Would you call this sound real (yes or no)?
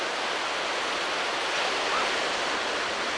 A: yes